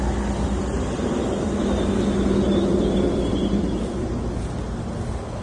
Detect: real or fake real